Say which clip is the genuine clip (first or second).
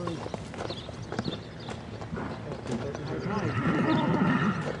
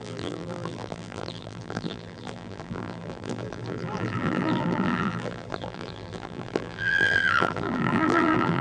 first